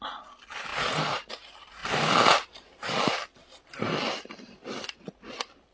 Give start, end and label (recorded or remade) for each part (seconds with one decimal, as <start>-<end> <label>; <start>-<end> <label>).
0.0-0.7 recorded; 0.7-1.3 remade; 1.3-1.8 recorded; 1.8-3.0 remade; 3.0-5.7 recorded